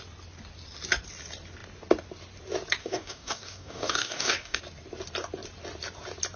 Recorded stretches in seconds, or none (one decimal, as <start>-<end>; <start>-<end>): 0.0-2.8; 4.6-6.4